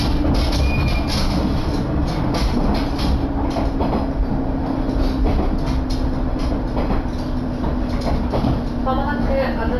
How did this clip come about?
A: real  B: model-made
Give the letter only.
A